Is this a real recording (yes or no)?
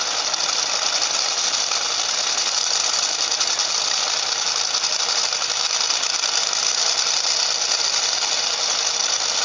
yes